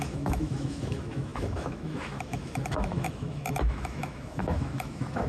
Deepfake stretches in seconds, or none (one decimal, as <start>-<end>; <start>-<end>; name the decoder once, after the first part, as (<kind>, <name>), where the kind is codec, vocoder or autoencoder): 0.0-5.3 (autoencoder, DAC-VAE)